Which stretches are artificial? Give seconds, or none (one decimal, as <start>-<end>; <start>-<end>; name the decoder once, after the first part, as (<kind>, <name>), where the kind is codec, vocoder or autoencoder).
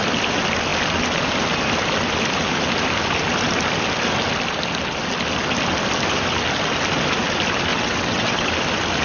7.7-8.5 (vocoder, WaveNeXt)